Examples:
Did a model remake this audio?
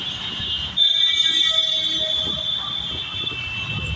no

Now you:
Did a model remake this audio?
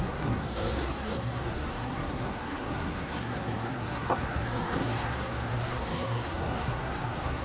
yes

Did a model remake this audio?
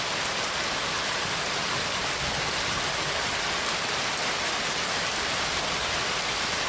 no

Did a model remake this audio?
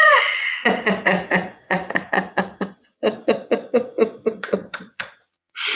yes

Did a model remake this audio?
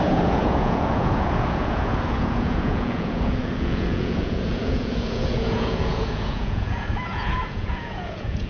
yes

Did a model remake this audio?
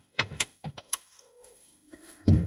yes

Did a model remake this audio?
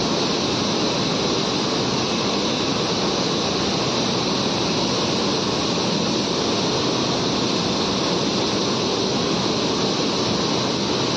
no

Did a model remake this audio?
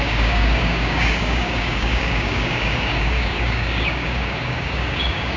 yes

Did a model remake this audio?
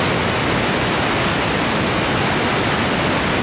no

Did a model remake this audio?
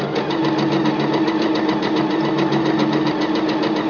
no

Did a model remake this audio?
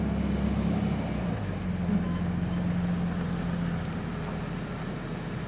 no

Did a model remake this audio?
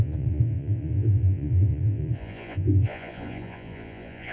yes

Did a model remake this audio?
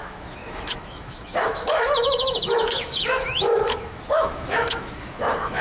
yes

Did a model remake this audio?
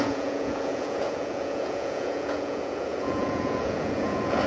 yes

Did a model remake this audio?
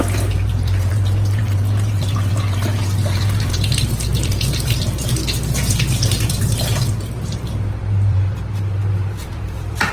yes